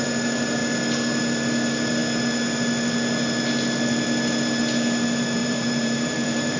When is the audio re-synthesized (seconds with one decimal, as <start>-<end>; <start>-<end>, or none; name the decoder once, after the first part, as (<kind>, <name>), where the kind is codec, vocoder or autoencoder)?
5.4-6.6 (vocoder, BigVGAN v2)